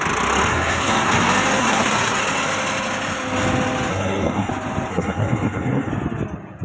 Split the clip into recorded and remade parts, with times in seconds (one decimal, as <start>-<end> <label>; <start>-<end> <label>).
0.0-0.5 recorded; 0.5-1.1 remade; 1.1-1.6 recorded; 1.6-2.2 remade; 2.2-3.9 recorded; 3.9-4.5 remade; 4.5-4.9 recorded; 4.9-5.9 remade; 5.9-6.6 recorded